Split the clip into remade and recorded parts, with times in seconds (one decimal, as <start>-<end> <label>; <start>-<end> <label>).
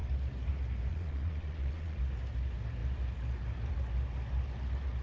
0.0-0.9 recorded; 0.9-2.0 remade; 2.0-5.0 recorded